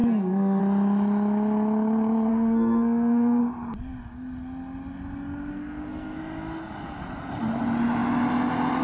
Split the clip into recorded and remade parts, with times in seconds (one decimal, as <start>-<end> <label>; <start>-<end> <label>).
0.0-0.6 remade; 0.6-2.3 recorded; 2.3-3.4 remade; 3.4-5.5 recorded; 5.5-6.2 remade; 6.2-8.8 recorded